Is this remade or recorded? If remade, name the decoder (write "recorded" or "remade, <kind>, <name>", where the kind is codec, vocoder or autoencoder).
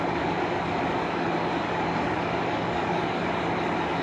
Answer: remade, codec, DAC